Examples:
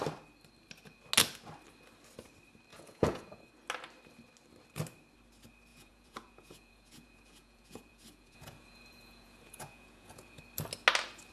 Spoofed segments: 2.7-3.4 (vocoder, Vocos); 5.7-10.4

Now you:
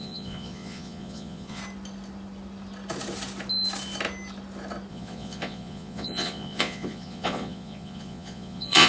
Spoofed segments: 0.0-1.6 (vocoder, Vocos); 4.9-8.9

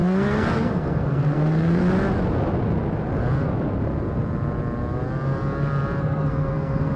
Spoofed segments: 0.0-1.8 (codec, SNAC); 6.0-7.0

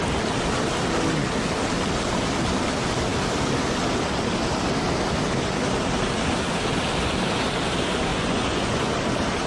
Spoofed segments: 8.1-8.9 (vocoder, Vocos)